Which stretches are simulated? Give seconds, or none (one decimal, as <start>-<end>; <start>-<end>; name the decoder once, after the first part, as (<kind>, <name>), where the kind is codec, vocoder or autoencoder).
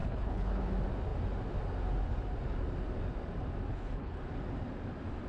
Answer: 0.0-0.6 (codec, HILCodec); 3.7-4.2